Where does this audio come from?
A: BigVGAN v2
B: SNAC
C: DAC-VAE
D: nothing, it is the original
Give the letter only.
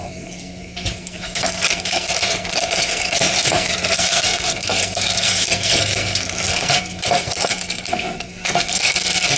B